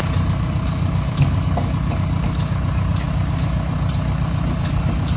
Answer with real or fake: real